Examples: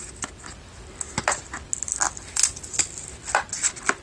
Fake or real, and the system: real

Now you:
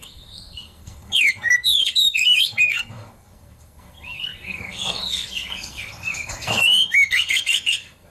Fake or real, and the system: fake, codec, SNAC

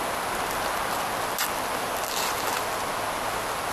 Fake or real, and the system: real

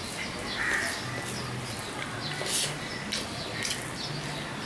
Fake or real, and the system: real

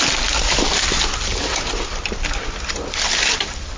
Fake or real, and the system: real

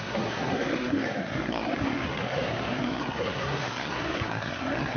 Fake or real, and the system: fake, codec, SNAC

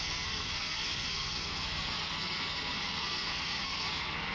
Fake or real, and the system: fake, codec, SNAC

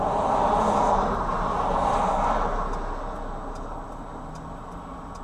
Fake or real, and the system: real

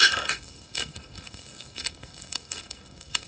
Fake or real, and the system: fake, codec, SNAC